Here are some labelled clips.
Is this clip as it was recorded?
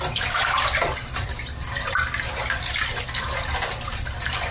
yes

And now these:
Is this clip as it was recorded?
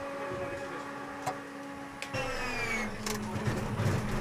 yes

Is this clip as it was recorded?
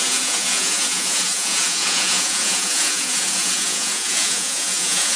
no